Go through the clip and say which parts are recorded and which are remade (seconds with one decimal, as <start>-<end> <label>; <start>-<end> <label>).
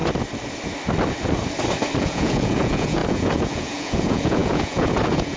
0.0-2.0 recorded; 2.0-5.4 remade